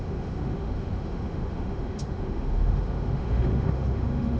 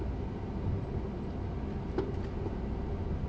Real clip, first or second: second